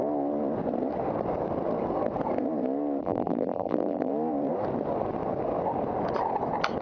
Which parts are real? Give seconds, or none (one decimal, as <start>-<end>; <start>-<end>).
0.0-3.0; 4.1-6.8